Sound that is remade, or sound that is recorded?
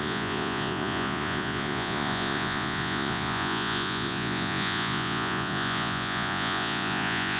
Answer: remade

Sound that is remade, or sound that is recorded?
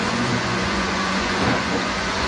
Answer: remade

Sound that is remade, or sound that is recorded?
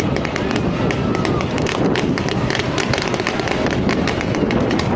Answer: recorded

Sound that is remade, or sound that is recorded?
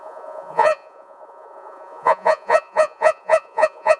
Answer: remade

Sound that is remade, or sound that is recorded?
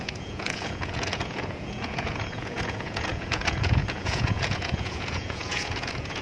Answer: remade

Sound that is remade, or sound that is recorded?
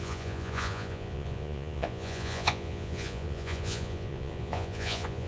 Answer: remade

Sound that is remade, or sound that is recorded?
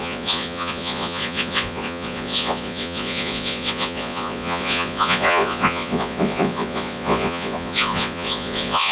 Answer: remade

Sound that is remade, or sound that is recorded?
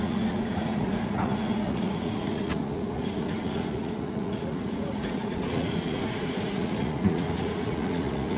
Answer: remade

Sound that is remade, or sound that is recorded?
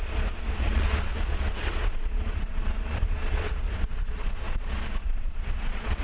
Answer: remade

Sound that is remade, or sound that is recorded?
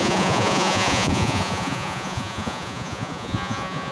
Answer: remade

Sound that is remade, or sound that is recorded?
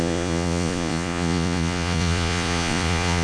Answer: remade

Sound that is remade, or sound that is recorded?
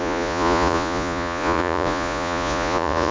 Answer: remade